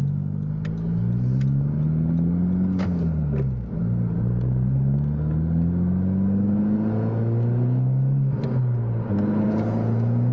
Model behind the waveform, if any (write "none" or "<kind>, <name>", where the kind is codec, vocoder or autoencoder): none